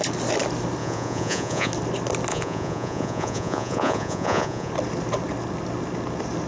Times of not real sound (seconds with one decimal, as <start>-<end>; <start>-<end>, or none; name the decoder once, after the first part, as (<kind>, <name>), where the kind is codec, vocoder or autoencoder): 0.8-1.7 (vocoder, Vocos); 2.3-4.7